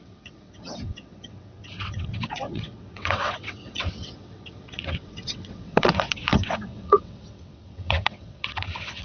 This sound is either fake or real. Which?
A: fake